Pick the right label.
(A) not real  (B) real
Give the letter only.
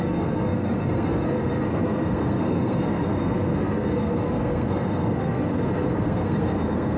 A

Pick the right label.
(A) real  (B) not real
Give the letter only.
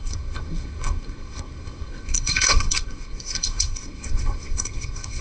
B